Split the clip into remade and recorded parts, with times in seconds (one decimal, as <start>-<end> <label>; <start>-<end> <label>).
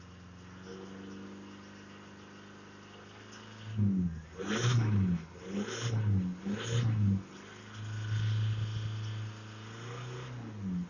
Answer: 0.0-10.9 recorded